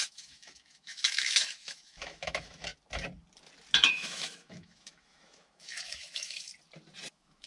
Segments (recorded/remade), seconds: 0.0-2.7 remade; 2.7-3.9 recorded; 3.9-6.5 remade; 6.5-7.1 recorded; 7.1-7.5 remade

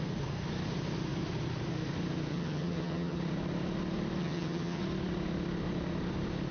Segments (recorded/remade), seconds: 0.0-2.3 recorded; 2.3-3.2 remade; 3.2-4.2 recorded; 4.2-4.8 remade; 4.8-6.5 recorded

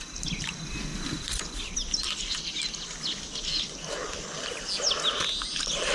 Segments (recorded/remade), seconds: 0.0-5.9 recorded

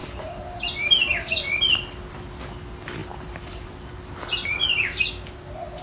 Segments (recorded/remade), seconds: 0.0-0.9 remade; 0.9-3.0 recorded; 3.0-5.1 remade; 5.1-5.8 recorded

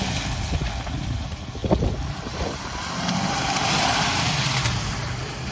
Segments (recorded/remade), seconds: 0.0-5.5 recorded

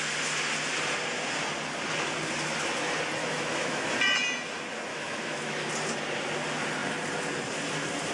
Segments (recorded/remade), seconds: 0.0-3.2 recorded; 3.2-3.9 remade; 3.9-4.9 recorded; 4.9-5.7 remade; 5.7-8.1 recorded